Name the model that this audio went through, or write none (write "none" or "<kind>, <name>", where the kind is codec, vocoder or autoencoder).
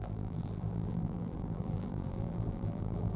vocoder, BigVGAN v2